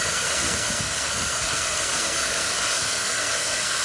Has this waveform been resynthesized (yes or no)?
yes